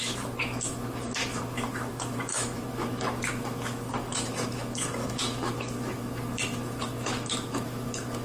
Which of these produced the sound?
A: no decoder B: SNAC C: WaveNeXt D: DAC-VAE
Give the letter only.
D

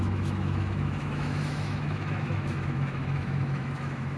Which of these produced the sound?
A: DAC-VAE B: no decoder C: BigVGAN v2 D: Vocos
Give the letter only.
A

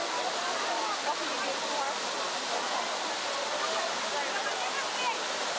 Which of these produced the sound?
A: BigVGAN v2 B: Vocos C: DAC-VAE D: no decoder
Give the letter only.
D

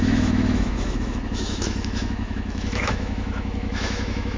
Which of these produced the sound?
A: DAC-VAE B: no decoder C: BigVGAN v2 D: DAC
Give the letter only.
A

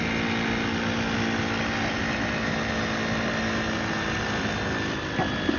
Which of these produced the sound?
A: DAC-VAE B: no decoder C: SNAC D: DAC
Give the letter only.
B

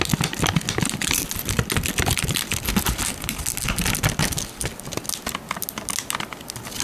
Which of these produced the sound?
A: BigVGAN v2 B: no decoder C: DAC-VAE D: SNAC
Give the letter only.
B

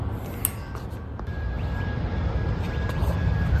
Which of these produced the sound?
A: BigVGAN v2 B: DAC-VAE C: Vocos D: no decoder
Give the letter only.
D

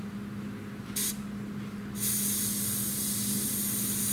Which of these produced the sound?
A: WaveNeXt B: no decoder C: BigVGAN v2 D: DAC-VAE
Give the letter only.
B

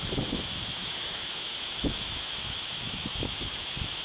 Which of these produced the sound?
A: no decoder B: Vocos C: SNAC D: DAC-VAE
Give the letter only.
D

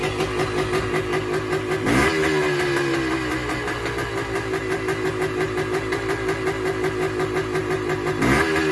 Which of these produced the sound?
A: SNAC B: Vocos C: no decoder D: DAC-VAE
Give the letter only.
C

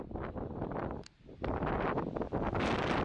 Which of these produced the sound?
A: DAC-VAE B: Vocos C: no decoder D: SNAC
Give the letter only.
C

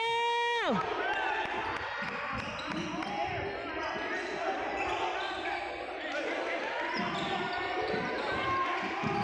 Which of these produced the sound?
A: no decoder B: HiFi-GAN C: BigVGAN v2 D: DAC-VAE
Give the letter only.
A